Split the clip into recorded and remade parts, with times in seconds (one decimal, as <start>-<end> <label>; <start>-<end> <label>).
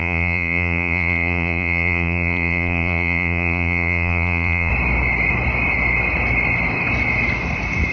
0.0-4.7 remade; 4.7-7.9 recorded